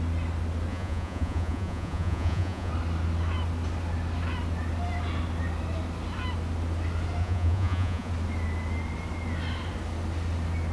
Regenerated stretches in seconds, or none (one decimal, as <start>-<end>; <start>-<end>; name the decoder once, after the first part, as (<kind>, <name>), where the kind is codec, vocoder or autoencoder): 0.7-2.7 (vocoder, Vocos); 7.2-8.1